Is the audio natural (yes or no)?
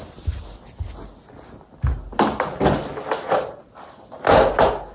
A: yes